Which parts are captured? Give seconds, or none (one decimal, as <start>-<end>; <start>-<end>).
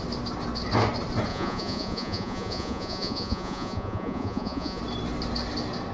0.0-1.3; 4.8-5.9